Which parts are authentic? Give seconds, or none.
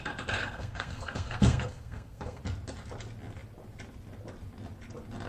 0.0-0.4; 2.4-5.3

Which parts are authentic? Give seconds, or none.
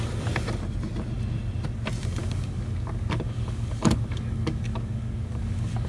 0.0-2.2